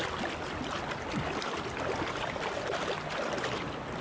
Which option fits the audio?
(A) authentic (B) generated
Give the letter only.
A